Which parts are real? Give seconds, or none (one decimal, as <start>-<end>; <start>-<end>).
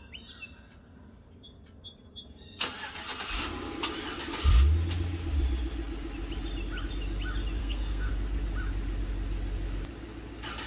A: 0.0-7.6; 8.1-10.7